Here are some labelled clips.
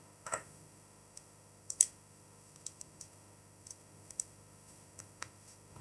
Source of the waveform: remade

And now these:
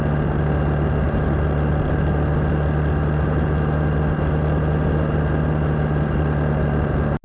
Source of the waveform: recorded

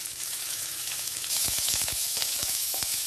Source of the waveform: remade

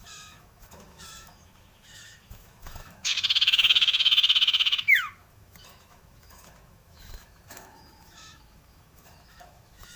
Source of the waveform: remade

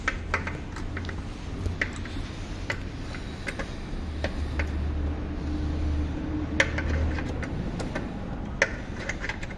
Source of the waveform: recorded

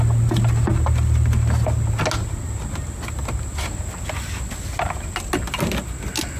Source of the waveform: recorded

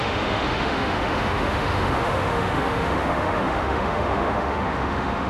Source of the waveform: remade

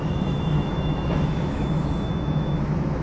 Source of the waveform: remade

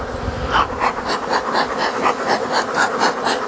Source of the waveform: recorded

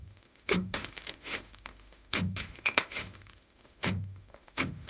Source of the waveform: remade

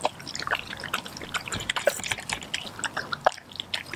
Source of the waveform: recorded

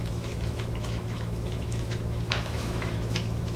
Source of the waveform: remade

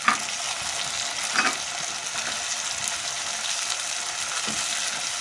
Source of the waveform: recorded